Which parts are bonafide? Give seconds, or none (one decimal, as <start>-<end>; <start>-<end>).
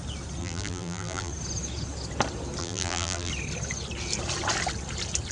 0.0-0.4; 1.3-2.6; 3.3-5.3